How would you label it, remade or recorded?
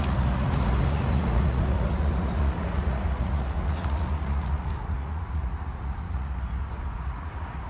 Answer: remade